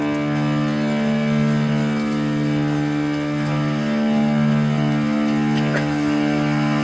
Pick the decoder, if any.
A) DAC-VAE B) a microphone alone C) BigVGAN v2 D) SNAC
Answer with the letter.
B